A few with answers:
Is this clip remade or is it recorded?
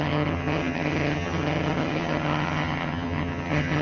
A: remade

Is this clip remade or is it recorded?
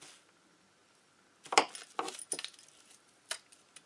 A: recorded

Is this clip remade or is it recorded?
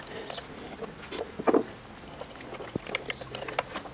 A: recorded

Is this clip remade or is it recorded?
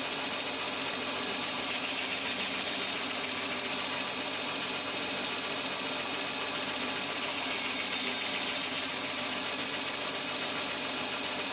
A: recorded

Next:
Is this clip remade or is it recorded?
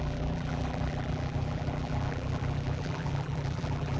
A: remade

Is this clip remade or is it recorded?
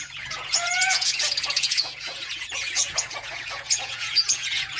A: remade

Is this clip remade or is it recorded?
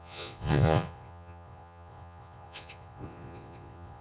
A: remade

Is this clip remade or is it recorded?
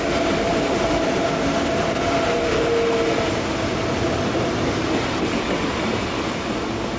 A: recorded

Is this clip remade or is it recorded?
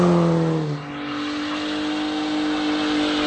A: recorded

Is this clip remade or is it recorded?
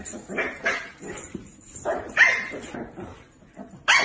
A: recorded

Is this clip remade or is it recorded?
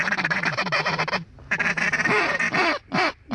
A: remade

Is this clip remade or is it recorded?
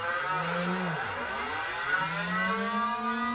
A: recorded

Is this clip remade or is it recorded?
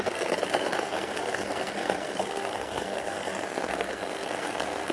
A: remade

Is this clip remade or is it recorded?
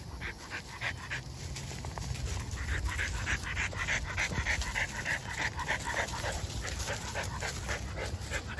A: recorded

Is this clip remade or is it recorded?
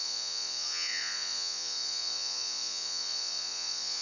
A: remade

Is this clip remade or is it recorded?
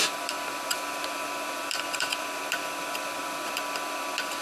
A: remade